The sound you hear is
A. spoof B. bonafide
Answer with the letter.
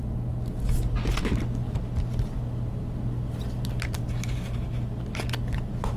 B